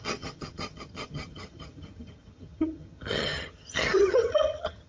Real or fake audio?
fake